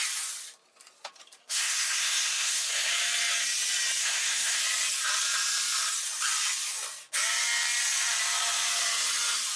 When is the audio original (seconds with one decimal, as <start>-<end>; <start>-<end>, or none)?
0.0-1.4; 2.9-4.0; 4.6-9.6